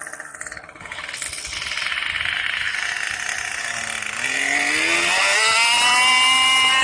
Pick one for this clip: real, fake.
real